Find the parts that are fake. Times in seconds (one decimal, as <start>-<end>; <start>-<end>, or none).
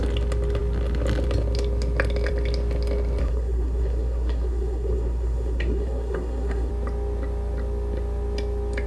3.2-6.7